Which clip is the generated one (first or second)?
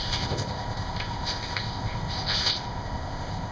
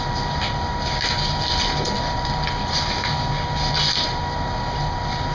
first